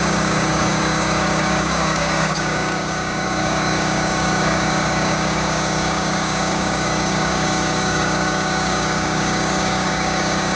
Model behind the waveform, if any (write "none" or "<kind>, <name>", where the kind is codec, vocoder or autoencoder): codec, DAC